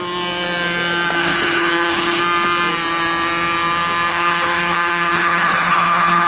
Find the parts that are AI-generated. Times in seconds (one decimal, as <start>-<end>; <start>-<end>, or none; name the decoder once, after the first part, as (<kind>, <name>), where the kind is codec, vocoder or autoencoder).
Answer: 1.2-2.2 (codec, HILCodec); 4.1-6.3